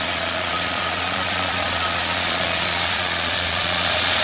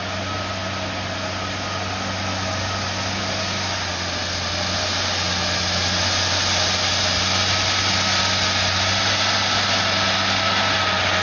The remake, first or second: first